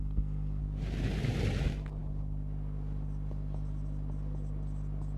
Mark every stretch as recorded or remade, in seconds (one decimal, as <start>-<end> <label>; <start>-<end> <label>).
0.0-0.6 remade; 0.6-5.2 recorded